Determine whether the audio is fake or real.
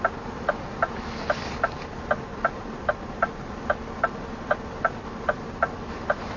real